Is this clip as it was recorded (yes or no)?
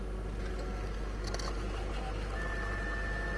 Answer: yes